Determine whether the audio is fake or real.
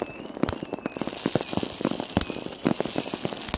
real